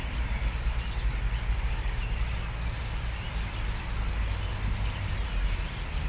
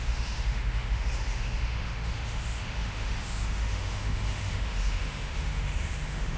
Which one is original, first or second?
first